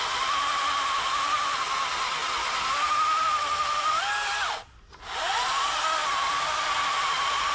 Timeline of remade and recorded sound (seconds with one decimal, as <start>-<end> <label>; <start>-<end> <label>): 0.0-7.5 recorded